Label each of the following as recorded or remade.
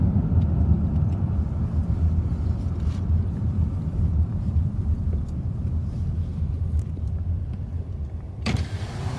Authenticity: remade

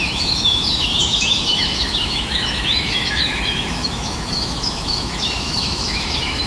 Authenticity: remade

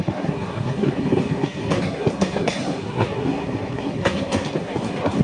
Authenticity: remade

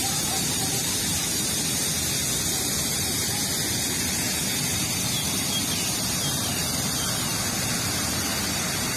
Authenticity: recorded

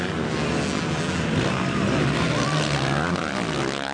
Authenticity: recorded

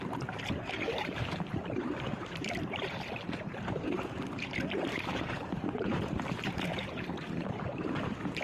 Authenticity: remade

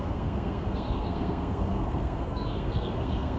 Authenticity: remade